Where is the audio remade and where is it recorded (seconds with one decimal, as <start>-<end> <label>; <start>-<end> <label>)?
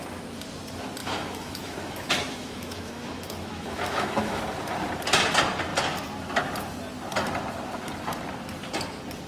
0.0-1.0 recorded; 1.0-4.4 remade; 4.4-9.3 recorded